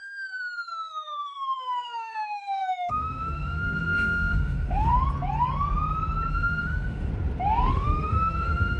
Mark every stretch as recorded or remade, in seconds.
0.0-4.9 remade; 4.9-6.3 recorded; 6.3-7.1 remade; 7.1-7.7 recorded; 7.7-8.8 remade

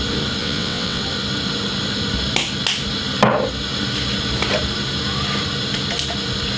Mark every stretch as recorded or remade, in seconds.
0.0-0.4 recorded; 0.4-1.0 remade; 1.0-6.6 recorded

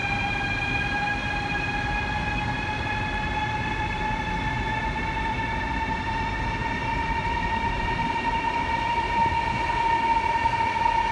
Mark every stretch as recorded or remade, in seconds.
0.0-6.6 recorded; 6.6-9.3 remade; 9.3-11.1 recorded

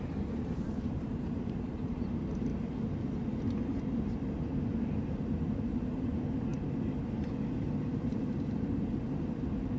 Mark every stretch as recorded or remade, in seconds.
0.0-2.5 remade; 2.5-4.9 recorded; 4.9-6.5 remade; 6.5-7.0 recorded; 7.0-9.8 remade

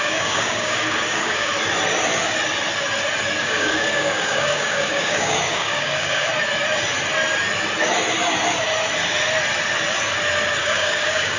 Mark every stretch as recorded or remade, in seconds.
0.0-1.5 remade; 1.5-3.4 recorded; 3.4-6.3 remade; 6.3-10.6 recorded; 10.6-11.4 remade